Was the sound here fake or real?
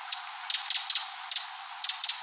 real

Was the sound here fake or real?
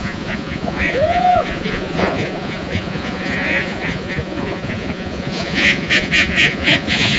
fake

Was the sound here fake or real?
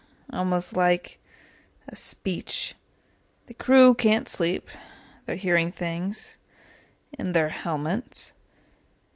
real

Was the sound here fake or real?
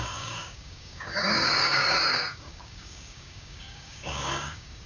fake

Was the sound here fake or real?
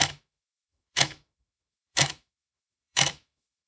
fake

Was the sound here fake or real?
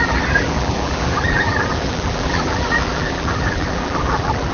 fake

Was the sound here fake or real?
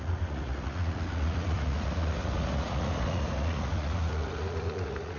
fake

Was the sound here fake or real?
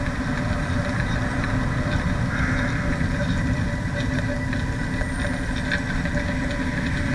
real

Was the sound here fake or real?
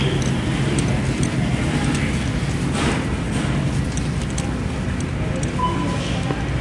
real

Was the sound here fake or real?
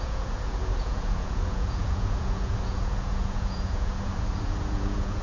fake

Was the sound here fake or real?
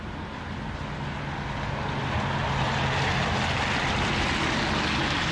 real